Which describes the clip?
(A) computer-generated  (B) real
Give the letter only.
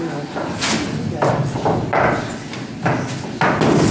B